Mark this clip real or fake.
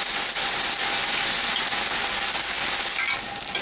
real